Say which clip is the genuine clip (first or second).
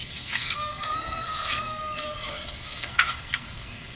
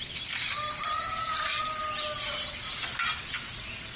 second